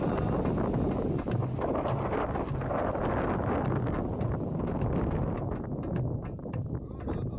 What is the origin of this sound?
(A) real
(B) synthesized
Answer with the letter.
A